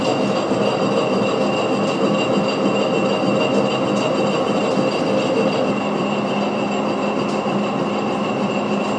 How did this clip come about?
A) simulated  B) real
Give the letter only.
B